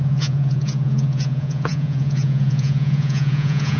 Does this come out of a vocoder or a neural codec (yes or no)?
yes